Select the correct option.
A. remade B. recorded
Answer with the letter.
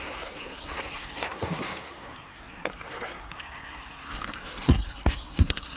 A